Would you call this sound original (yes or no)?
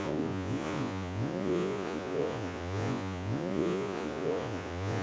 no